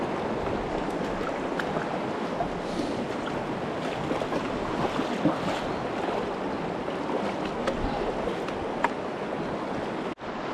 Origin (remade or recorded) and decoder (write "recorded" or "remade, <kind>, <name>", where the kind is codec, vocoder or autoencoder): recorded